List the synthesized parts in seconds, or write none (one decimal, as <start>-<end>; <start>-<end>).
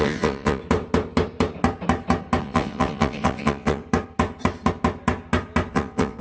0.0-0.6; 2.4-3.8; 5.7-6.2